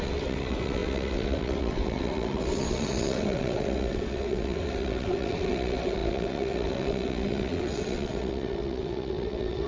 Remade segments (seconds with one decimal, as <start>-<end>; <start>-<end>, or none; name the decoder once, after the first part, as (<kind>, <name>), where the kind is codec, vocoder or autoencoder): 0.0-9.7 (vocoder, WaveNeXt)